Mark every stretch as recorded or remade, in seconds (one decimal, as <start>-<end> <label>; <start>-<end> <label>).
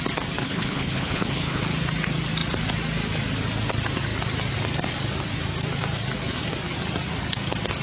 0.0-0.4 recorded; 0.4-1.6 remade; 1.6-7.8 recorded